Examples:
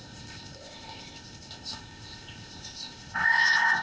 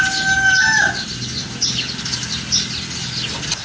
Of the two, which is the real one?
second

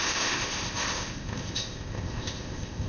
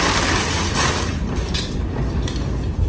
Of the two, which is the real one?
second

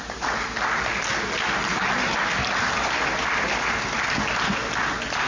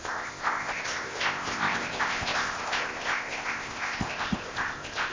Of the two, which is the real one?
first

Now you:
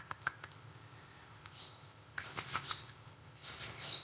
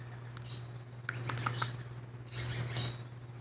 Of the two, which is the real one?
second